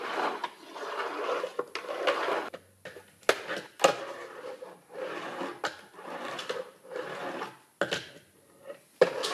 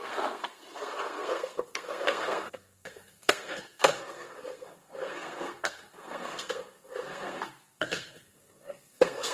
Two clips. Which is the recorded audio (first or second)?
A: first